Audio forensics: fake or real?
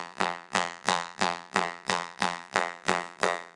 fake